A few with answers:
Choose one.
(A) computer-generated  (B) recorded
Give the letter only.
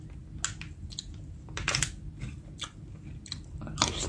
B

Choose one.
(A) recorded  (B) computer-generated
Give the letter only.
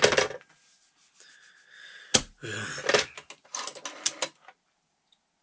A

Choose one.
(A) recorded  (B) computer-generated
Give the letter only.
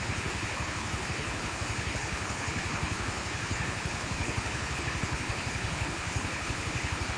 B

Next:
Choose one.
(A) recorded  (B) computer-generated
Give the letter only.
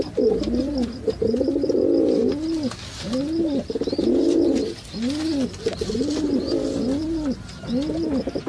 A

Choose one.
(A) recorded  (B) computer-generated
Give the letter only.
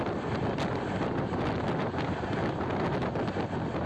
A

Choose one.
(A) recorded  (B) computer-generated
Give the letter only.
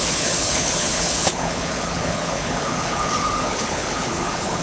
B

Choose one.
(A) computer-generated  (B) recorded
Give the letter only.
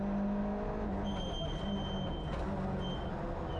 B